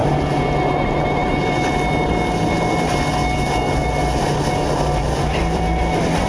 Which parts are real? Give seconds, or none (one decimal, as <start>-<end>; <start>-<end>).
0.0-0.7; 1.2-5.0

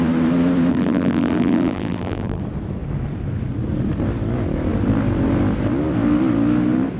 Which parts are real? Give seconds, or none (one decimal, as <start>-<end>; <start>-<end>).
0.0-0.7; 2.4-7.0

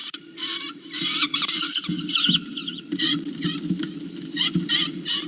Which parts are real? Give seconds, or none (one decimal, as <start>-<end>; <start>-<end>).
1.9-2.6; 4.4-5.3